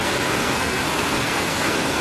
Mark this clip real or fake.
fake